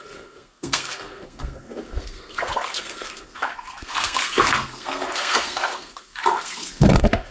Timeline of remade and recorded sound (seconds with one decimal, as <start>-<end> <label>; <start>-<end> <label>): 0.0-7.3 remade